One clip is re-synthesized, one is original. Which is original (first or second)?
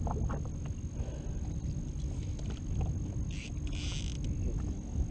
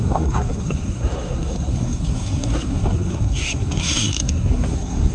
first